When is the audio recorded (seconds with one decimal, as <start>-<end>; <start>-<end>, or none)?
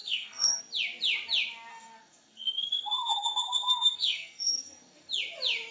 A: 0.6-1.7; 5.1-5.7